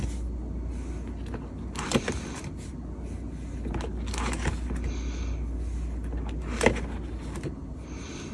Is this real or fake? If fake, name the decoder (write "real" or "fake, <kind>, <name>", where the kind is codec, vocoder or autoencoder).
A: real